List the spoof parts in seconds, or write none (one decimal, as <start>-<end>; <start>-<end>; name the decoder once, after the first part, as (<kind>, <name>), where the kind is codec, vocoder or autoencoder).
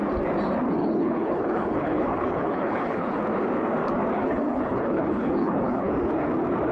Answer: 0.8-3.2 (codec, HILCodec); 4.2-5.9